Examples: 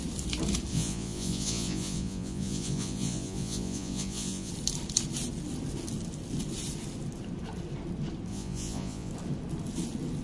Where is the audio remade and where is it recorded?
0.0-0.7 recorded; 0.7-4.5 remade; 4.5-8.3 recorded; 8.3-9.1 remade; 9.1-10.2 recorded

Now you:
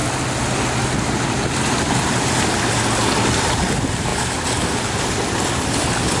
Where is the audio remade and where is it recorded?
0.0-6.2 recorded

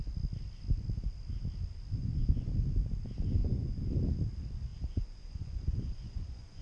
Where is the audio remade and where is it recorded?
0.0-2.0 recorded; 2.0-2.5 remade; 2.5-3.4 recorded; 3.4-3.9 remade; 3.9-4.7 recorded; 4.7-6.6 remade